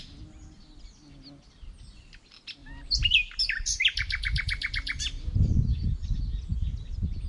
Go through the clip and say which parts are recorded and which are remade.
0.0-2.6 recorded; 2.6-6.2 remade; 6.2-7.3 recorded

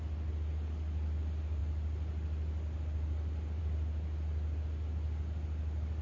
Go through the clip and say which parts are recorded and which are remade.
0.0-6.0 recorded